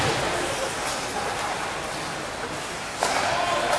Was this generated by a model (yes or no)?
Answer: no